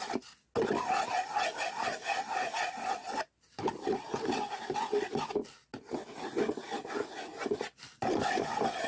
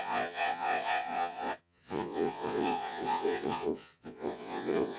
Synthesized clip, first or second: second